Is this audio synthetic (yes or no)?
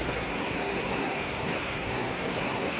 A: yes